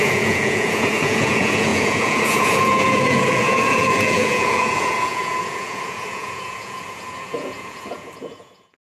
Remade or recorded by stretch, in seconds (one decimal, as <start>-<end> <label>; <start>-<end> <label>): 0.0-9.0 remade